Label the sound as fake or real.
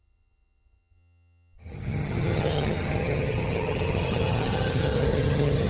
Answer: fake